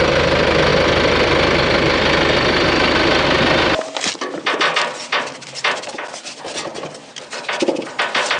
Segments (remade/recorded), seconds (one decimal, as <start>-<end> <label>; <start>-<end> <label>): 0.0-8.4 recorded